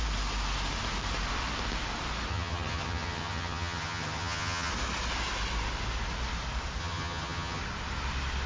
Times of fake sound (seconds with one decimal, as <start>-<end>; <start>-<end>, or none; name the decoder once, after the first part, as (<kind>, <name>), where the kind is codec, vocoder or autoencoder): 2.3-4.7 (vocoder, HiFi-GAN); 6.8-7.6